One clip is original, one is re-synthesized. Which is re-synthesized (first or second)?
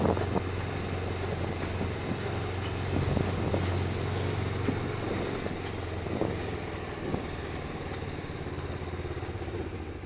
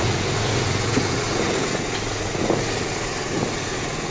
second